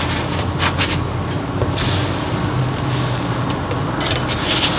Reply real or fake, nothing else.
real